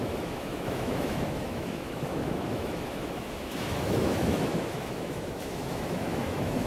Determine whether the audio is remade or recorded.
remade